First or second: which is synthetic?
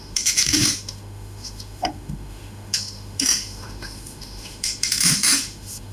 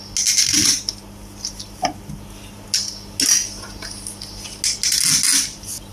first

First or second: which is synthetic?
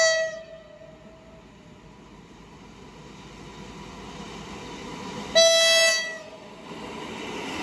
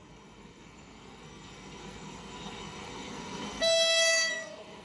second